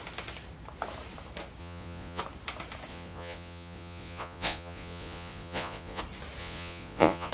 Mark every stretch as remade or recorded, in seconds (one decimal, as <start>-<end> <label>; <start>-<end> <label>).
0.0-1.6 recorded; 1.6-2.2 remade; 2.2-2.9 recorded; 2.9-6.0 remade; 6.0-6.4 recorded; 6.4-7.3 remade